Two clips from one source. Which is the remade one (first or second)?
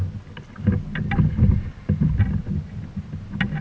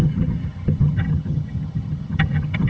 second